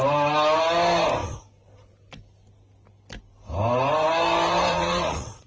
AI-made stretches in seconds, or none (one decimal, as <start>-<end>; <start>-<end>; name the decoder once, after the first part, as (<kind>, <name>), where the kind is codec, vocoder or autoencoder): 4.7-5.5 (vocoder, Vocos)